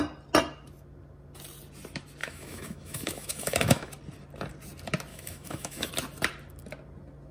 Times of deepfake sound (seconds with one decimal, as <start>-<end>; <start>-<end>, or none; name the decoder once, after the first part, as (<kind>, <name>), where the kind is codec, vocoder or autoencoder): 2.2-3.9 (autoencoder, DAC-VAE); 5.1-5.9